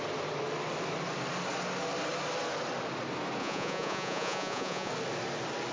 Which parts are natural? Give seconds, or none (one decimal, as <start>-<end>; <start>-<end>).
0.0-3.4; 4.9-5.7